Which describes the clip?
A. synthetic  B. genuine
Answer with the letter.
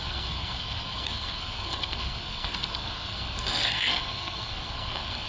A